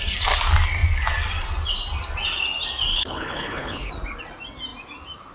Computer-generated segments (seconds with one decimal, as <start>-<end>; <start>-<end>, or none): 2.9-3.9